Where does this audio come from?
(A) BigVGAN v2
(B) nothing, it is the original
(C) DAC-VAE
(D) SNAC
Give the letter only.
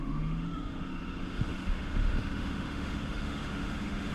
C